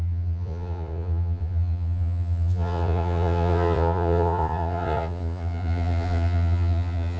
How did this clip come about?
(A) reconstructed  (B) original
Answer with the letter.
A